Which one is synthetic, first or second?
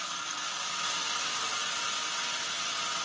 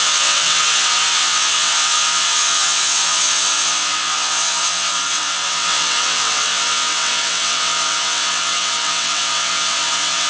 second